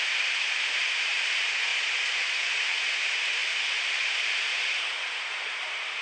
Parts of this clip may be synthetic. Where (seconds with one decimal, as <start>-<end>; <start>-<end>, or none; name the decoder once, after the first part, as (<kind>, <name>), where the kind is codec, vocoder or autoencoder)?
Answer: 0.0-3.4 (vocoder, BigVGAN v2); 4.0-6.0